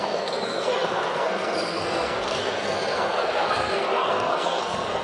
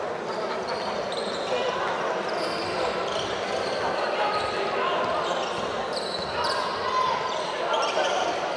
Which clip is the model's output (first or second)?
first